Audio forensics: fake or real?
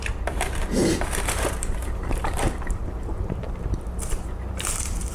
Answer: fake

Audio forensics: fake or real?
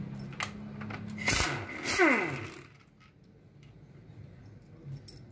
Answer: real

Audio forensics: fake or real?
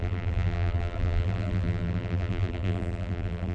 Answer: fake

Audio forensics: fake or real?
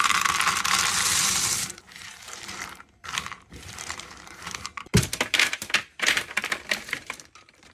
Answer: fake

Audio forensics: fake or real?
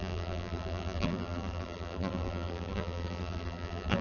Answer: fake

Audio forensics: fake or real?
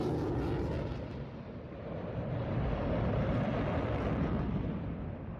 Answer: real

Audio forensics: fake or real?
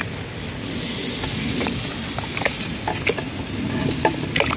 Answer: real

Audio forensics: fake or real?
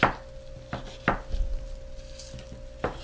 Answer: real